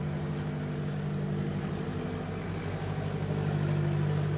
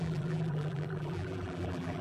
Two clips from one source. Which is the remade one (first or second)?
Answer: second